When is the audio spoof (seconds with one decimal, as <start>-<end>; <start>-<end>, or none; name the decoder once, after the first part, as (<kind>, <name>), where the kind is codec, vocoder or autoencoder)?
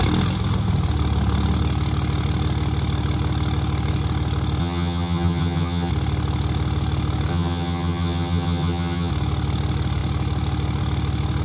4.6-5.9 (vocoder, HiFi-GAN); 7.3-9.1